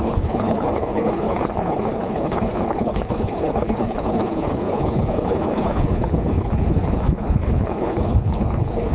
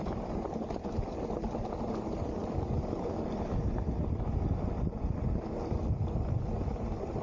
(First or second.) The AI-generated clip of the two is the first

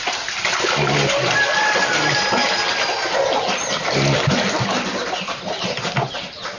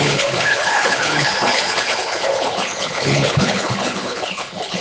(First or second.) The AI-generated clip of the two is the second